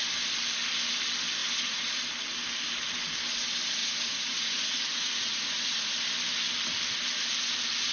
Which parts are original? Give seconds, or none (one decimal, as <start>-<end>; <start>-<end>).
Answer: 0.0-1.4; 2.0-3.8; 5.9-7.9

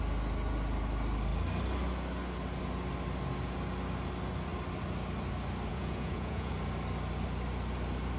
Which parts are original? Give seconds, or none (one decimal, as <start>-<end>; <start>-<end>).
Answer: 0.0-5.7; 6.5-8.2

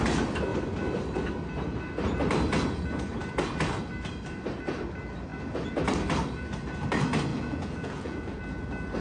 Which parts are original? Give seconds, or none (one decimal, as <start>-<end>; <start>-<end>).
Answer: 0.0-7.3; 8.4-9.0

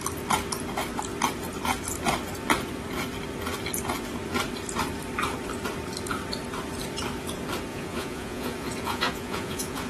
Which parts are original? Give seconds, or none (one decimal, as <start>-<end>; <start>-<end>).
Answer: 0.0-7.7

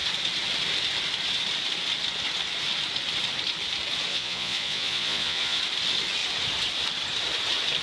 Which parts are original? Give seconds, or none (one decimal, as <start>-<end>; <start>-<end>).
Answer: 0.0-4.1; 5.6-7.8